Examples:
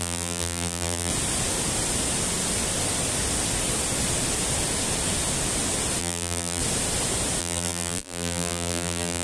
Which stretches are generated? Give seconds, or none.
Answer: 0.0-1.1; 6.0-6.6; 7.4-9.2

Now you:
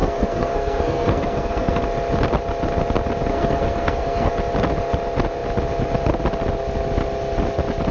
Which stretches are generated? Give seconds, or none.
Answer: 0.0-1.8; 3.3-4.3

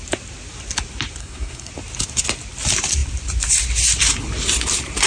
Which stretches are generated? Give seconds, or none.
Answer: 1.2-1.7